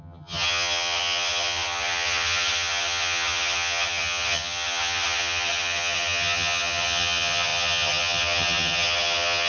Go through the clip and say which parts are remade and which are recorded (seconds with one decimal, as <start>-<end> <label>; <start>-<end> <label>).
0.0-9.5 remade